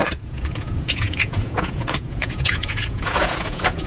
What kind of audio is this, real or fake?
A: fake